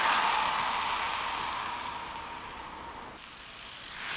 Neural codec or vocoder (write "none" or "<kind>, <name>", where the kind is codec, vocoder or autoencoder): none